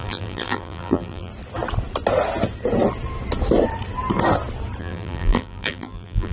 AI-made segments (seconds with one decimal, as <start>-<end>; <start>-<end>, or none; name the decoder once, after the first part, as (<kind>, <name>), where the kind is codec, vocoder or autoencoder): 0.0-1.3 (vocoder, BigVGAN v2); 4.8-6.3